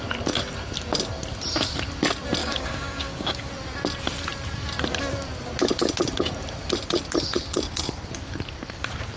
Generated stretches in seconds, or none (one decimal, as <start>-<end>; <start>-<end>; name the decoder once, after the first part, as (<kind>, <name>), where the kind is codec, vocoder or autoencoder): 2.4-3.5 (codec, DAC)